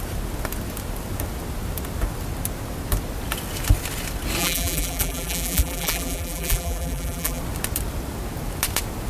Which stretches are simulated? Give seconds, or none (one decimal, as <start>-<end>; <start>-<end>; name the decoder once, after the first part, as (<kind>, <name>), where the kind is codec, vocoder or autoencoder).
4.4-7.4 (vocoder, BigVGAN v2)